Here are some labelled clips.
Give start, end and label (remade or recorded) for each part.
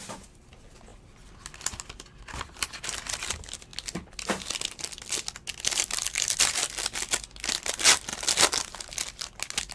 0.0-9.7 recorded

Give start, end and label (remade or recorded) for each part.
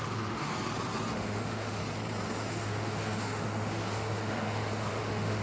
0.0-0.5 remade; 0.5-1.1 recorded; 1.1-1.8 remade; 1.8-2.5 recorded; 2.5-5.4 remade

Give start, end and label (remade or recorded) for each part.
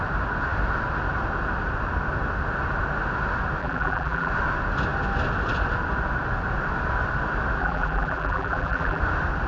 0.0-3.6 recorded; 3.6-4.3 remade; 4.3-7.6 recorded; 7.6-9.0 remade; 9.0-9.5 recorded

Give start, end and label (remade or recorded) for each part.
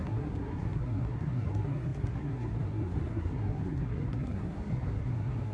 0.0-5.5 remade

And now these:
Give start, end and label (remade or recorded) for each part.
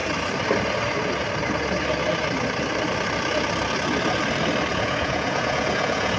0.0-4.7 recorded; 4.7-6.2 remade